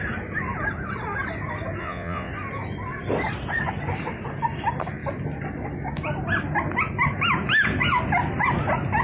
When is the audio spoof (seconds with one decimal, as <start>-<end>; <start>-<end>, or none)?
1.8-2.3